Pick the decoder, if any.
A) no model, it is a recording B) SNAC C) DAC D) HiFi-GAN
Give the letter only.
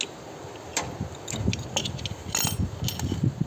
A